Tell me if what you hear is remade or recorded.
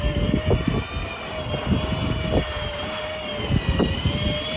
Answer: recorded